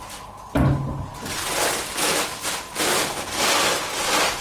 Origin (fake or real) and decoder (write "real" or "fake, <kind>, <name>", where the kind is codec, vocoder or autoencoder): real